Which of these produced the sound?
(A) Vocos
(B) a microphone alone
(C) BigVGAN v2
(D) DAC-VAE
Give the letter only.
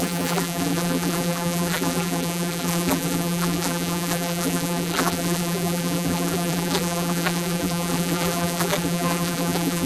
C